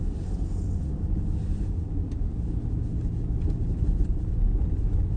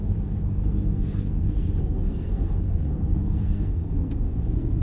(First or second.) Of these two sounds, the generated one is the second